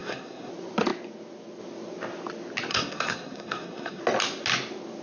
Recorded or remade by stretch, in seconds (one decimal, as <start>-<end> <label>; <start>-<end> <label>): 0.0-0.5 remade; 0.5-2.7 recorded; 2.7-4.0 remade; 4.0-5.0 recorded

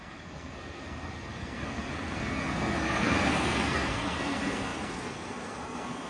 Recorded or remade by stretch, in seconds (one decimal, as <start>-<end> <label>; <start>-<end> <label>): 0.0-6.1 remade

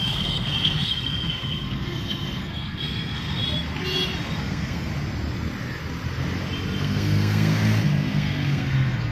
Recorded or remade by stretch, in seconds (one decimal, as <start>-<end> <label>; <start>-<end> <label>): 0.0-3.4 remade; 3.4-4.4 recorded; 4.4-4.9 remade; 4.9-6.8 recorded; 6.8-9.1 remade